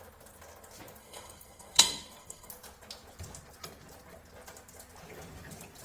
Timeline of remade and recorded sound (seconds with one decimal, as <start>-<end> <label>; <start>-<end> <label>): 0.0-1.0 recorded; 1.0-2.5 remade; 2.5-5.8 recorded